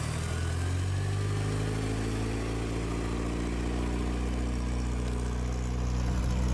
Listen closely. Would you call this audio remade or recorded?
recorded